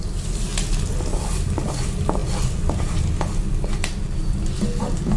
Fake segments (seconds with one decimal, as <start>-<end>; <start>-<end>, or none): 0.0-0.5; 1.3-5.2

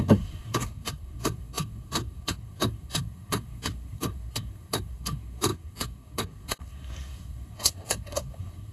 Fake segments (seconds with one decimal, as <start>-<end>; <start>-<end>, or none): 0.0-8.7

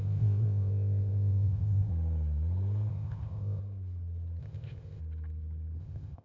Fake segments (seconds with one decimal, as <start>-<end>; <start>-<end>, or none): 0.0-1.9; 2.9-3.6; 4.4-5.0; 5.8-6.2

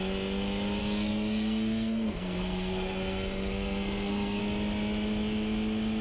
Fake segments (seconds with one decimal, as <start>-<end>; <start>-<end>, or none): 0.8-4.4

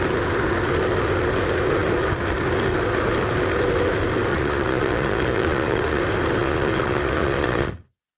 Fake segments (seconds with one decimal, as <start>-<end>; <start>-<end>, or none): 4.3-6.0; 6.4-8.2

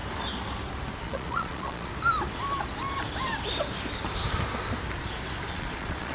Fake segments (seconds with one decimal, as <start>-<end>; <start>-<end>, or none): 1.0-1.9; 5.5-6.1

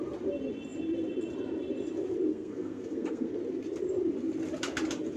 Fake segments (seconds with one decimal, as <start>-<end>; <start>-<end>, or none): 2.3-3.4